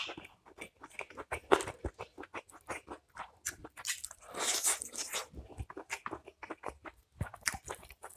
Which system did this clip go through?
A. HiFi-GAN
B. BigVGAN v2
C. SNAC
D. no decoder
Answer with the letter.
D